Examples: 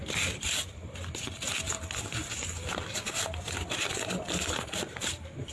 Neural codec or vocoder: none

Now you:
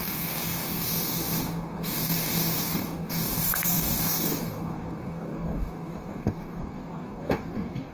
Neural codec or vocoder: codec, DAC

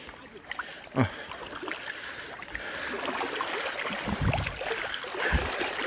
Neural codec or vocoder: none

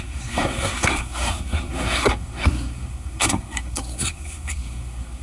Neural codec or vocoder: codec, SNAC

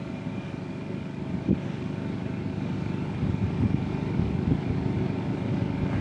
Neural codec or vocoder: codec, DAC